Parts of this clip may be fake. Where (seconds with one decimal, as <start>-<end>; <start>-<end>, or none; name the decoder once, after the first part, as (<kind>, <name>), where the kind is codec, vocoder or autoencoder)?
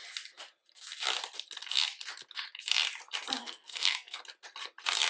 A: 3.4-4.2 (codec, SNAC)